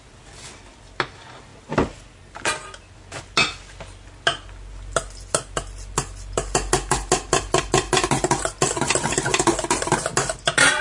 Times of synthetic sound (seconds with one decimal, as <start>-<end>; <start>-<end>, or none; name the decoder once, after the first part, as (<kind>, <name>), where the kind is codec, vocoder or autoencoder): none